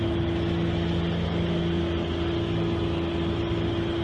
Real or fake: real